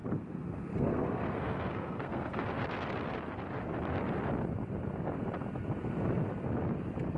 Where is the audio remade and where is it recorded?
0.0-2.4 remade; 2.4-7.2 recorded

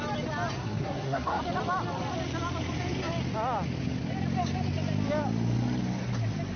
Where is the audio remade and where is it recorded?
0.0-0.6 recorded; 0.6-1.4 remade; 1.4-6.6 recorded

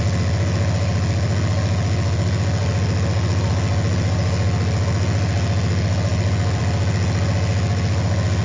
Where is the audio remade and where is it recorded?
0.0-8.4 recorded